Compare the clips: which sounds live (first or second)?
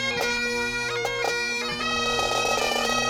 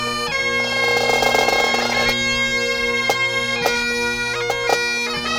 second